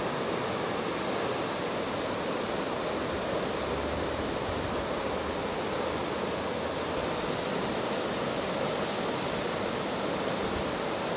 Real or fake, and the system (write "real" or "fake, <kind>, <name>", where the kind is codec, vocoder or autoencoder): real